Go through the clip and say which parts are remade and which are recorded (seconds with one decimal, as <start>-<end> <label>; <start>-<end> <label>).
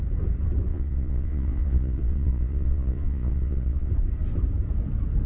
0.0-0.7 recorded; 0.7-3.9 remade; 3.9-5.3 recorded